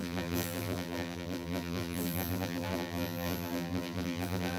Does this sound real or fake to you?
fake